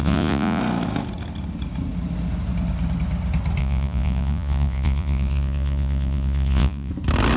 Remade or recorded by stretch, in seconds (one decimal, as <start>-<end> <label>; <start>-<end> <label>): 0.0-0.6 remade; 0.6-3.6 recorded; 3.6-6.9 remade; 6.9-7.4 recorded